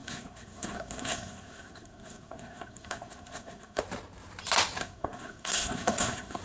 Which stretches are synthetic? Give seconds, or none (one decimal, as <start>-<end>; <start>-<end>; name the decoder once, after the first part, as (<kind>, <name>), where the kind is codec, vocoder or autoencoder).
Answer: 0.0-3.8 (codec, SNAC); 4.8-6.4